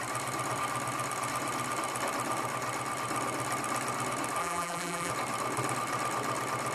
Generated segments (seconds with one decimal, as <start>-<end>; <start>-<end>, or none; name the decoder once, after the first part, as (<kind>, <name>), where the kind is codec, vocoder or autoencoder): 4.4-5.1 (vocoder, BigVGAN v2)